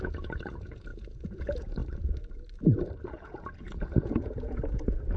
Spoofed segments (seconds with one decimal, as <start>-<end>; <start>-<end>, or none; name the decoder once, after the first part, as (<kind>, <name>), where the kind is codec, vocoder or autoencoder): 0.0-1.8 (vocoder, Vocos); 3.1-5.2